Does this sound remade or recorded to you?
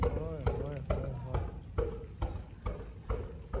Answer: recorded